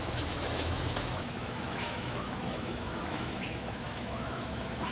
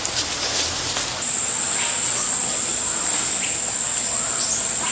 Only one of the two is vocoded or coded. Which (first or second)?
first